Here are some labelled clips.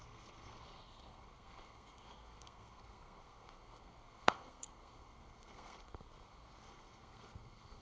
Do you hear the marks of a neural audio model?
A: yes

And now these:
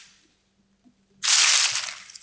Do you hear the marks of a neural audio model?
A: no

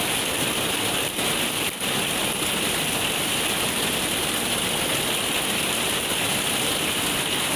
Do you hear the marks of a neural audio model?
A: no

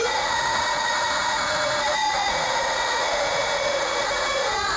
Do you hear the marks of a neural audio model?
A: yes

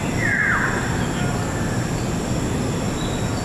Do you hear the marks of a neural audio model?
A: no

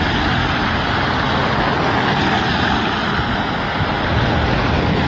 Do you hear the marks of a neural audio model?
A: no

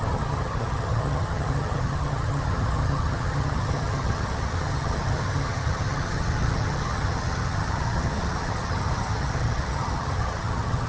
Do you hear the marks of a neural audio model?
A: yes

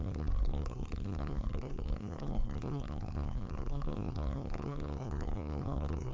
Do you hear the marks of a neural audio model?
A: yes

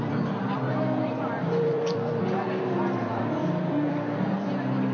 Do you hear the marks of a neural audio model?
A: yes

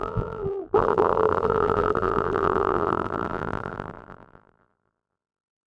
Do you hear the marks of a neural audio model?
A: yes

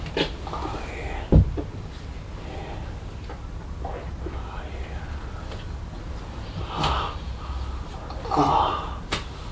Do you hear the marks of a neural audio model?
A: no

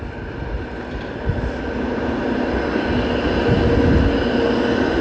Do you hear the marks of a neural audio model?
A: no